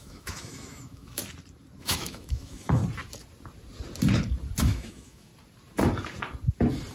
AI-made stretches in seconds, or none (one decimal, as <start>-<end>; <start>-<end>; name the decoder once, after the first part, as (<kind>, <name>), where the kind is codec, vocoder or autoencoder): 0.0-1.2 (autoencoder, DAC-VAE); 1.8-2.8; 4.6-5.3